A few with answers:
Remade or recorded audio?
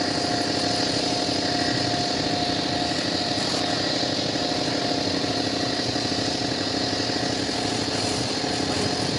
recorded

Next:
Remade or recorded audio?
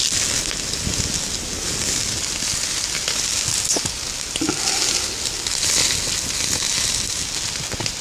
recorded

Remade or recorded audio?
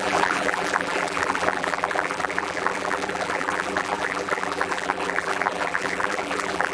remade